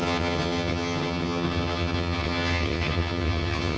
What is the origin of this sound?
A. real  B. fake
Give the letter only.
B